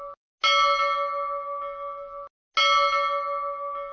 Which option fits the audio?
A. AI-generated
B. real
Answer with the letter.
B